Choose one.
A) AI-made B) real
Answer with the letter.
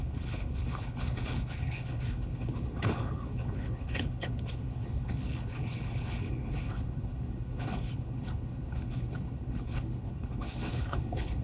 A